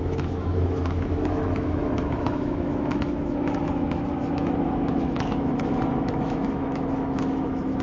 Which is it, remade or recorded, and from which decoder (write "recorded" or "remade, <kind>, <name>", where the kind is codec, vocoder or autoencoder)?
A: remade, autoencoder, DAC-VAE